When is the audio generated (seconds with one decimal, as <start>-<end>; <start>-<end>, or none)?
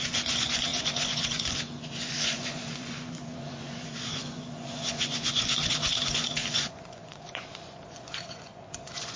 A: 0.0-9.2